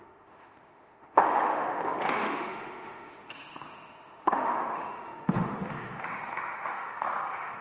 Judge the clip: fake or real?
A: fake